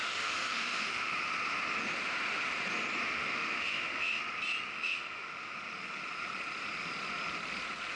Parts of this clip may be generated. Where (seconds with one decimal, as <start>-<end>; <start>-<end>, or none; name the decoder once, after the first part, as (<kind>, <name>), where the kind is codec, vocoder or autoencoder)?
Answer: 0.0-1.1 (autoencoder, DAC-VAE); 3.1-4.2; 4.7-5.5